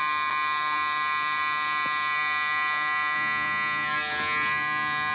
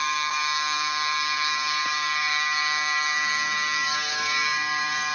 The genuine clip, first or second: first